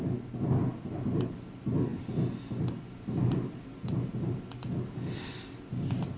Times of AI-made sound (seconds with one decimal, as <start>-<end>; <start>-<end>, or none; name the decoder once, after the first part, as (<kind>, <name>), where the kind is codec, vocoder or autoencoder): 0.7-1.3 (vocoder, BigVGAN v2); 1.9-5.3